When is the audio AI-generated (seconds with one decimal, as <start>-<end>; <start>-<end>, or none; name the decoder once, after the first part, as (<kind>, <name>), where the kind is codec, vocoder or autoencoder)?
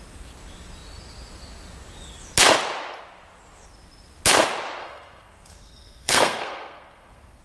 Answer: 4.8-7.4 (codec, SNAC)